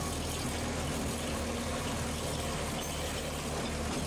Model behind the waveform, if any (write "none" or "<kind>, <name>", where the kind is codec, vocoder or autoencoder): none